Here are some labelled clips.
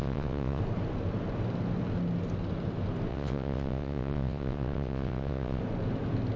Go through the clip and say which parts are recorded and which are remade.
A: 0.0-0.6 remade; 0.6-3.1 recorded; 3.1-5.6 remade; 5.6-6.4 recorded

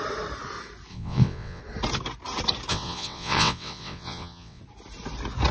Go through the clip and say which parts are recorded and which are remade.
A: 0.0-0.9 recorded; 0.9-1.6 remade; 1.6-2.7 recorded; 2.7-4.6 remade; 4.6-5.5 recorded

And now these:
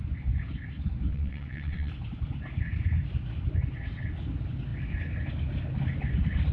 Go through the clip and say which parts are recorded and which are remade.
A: 0.0-1.1 recorded; 1.1-1.9 remade; 1.9-6.5 recorded

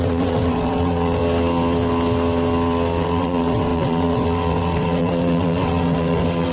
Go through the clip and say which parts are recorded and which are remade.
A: 0.0-1.2 remade; 1.2-3.0 recorded; 3.0-6.5 remade

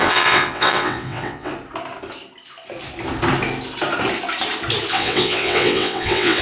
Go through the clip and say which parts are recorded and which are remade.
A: 0.0-1.5 remade; 1.5-4.9 recorded; 4.9-6.4 remade